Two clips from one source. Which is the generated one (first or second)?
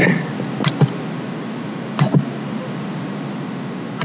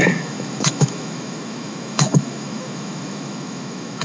second